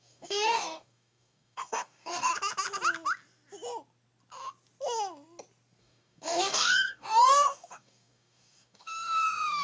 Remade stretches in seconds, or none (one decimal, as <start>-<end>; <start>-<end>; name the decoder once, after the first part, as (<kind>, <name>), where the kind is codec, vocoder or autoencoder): 0.0-2.3 (codec, DAC); 5.8-9.6